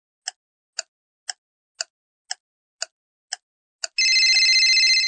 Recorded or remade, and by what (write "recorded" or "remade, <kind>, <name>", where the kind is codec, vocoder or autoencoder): recorded